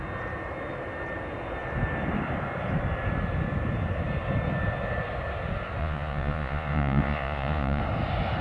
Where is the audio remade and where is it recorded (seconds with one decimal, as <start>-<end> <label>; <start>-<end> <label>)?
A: 0.0-5.8 recorded; 5.8-7.8 remade; 7.8-8.4 recorded